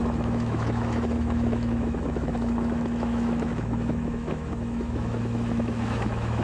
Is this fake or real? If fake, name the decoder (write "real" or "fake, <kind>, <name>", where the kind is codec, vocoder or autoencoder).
fake, autoencoder, DAC-VAE